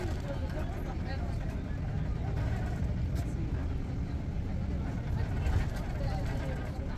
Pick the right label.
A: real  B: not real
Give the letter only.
A